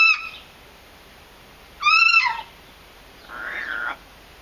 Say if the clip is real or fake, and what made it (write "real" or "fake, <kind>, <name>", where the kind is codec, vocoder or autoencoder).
real